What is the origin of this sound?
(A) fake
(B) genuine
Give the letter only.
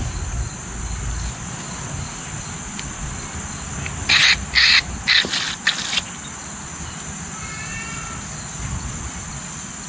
B